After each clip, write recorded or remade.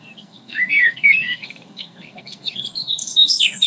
remade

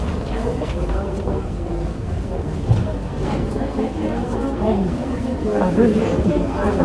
remade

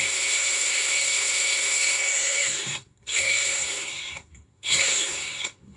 remade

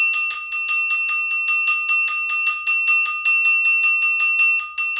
recorded